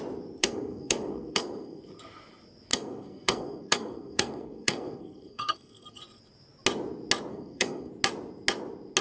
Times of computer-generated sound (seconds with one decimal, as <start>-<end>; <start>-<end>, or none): 0.4-1.8; 2.7-6.0; 7.3-7.9